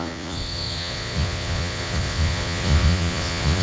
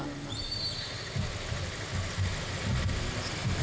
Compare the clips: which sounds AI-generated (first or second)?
first